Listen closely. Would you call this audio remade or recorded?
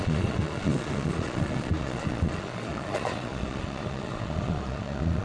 remade